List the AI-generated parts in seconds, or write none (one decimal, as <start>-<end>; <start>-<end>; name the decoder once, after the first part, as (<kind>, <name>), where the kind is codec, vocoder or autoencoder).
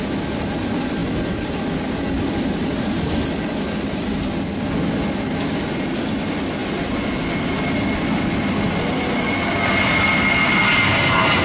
none